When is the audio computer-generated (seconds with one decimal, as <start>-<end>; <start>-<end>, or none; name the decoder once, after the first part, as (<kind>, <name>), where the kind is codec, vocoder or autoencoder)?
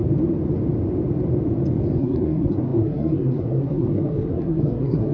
2.0-5.1 (codec, SNAC)